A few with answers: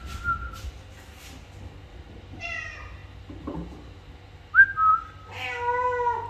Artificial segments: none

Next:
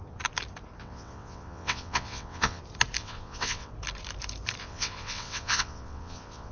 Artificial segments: 0.8-2.6 (vocoder, WaveNeXt); 3.0-3.7; 4.6-6.5

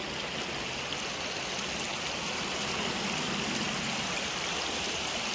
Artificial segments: 1.9-5.3 (vocoder, BigVGAN v2)

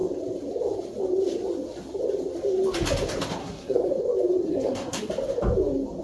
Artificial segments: 3.4-3.9 (codec, SNAC); 4.5-5.1